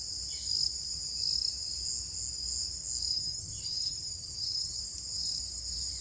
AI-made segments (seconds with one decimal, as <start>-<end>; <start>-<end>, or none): 3.1-4.8